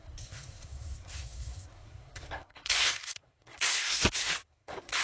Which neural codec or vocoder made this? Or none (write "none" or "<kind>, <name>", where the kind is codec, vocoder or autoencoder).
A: codec, SNAC